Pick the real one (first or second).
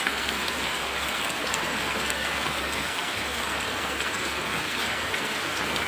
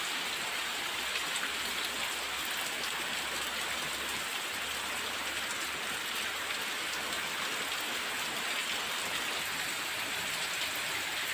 second